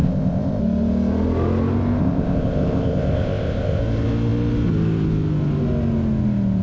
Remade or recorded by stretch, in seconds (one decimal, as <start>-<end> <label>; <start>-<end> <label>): 0.0-0.6 remade; 0.6-2.0 recorded; 2.0-3.8 remade; 3.8-6.6 recorded